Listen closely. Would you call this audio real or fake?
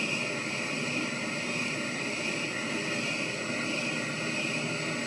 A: real